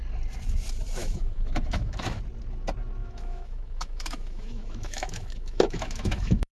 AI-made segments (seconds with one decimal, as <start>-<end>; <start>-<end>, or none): 1.0-2.2; 3.0-6.5